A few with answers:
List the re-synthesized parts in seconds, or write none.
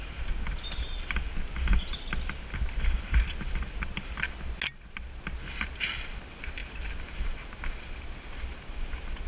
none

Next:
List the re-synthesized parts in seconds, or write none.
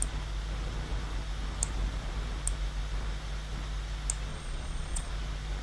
4.3-5.1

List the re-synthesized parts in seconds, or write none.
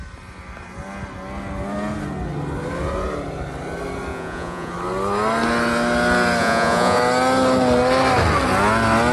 4.1-4.7; 6.4-7.0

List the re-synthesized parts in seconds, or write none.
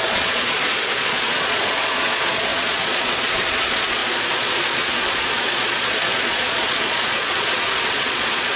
0.0-8.6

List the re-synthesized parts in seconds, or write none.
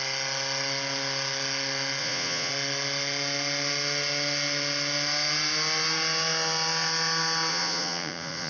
2.0-2.5; 7.5-8.5